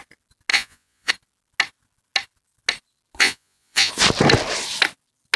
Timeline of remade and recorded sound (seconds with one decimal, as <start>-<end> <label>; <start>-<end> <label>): 0.0-0.5 recorded; 0.5-1.1 remade; 1.1-3.2 recorded; 3.2-3.9 remade; 3.9-5.4 recorded